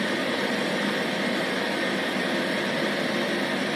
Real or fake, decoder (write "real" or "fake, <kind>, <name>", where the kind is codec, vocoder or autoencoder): real